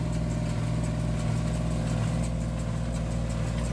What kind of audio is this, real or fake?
real